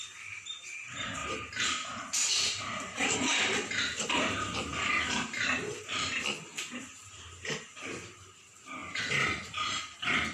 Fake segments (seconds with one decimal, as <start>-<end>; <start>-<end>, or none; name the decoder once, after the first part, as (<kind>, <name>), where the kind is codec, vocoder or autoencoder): 0.0-4.7 (vocoder, BigVGAN v2); 6.8-10.3